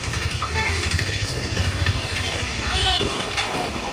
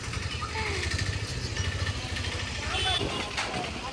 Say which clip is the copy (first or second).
first